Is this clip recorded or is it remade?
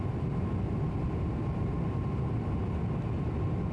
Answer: recorded